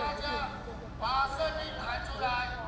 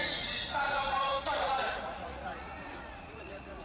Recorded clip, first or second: first